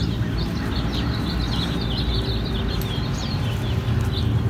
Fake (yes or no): no